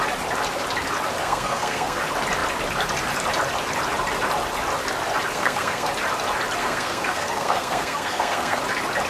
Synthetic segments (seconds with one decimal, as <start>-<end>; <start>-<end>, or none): 1.2-2.0; 5.3-5.9; 6.6-8.6